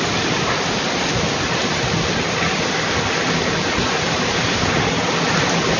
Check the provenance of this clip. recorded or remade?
recorded